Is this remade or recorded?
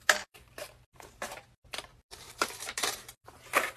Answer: remade